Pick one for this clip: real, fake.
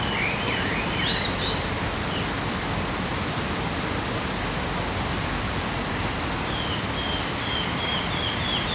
real